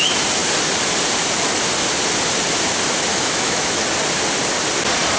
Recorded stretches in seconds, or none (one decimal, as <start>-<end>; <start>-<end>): 0.0-3.1; 3.8-5.2